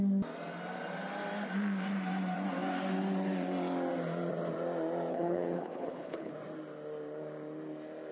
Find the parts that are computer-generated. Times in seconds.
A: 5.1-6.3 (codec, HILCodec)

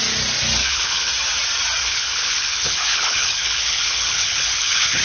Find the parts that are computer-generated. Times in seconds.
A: 0.6-1.1 (codec, HILCodec); 1.8-5.0